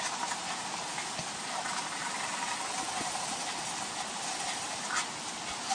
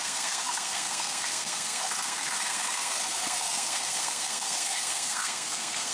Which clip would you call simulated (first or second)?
second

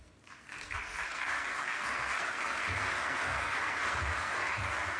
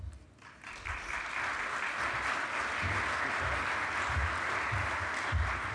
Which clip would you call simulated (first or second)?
first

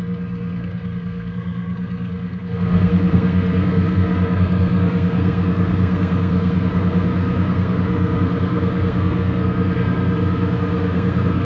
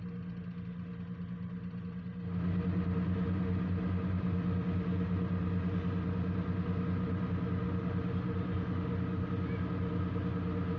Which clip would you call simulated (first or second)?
first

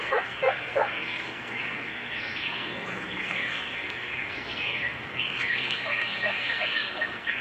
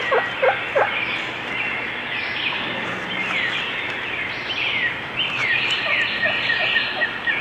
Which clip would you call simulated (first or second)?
first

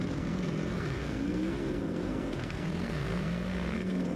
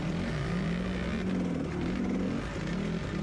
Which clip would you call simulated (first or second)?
first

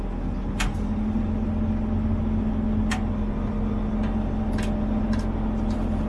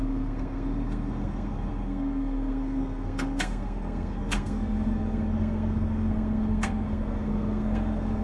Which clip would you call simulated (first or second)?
second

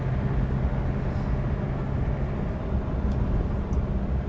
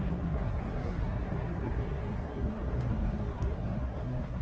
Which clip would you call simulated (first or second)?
second